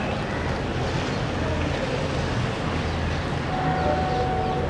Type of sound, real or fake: real